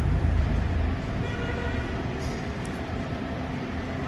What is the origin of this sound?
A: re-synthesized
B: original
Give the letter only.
A